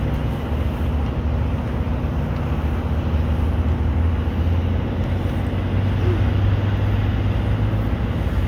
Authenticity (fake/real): real